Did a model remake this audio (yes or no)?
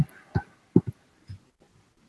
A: no